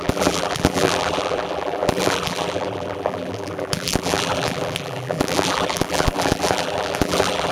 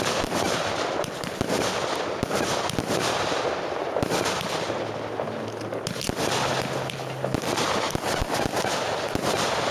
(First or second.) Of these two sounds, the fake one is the first